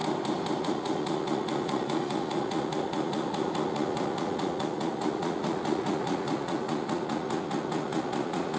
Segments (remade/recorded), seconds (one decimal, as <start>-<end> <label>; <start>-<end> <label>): 0.0-0.6 recorded; 0.6-8.6 remade